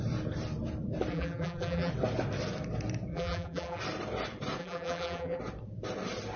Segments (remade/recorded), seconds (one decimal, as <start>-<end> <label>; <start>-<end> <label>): 0.0-1.1 recorded; 1.1-1.9 remade; 1.9-3.1 recorded; 3.1-3.8 remade; 3.8-4.6 recorded; 4.6-5.4 remade; 5.4-6.4 recorded